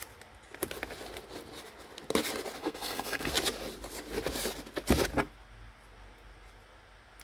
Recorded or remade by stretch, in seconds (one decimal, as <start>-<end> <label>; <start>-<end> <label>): 0.0-2.6 recorded; 2.6-3.3 remade; 3.3-7.2 recorded